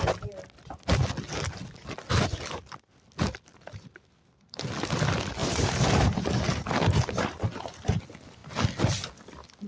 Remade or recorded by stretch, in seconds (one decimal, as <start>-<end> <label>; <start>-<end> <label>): 0.0-3.5 recorded; 3.5-4.7 remade; 4.7-5.4 recorded; 5.4-8.0 remade; 8.0-9.7 recorded